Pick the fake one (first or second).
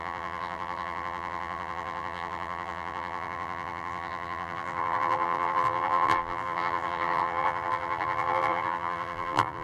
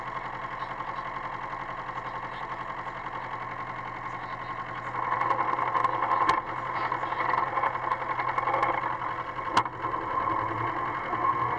first